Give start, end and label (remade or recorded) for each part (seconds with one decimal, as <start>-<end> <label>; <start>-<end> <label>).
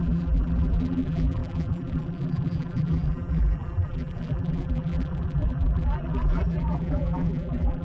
0.0-7.8 remade